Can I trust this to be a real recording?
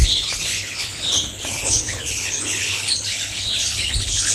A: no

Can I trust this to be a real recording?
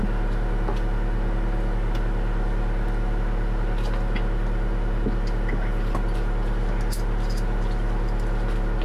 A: yes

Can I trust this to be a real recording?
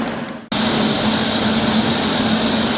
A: yes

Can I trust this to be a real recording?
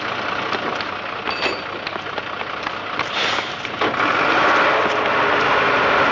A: yes